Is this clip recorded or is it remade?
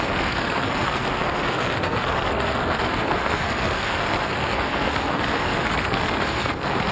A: remade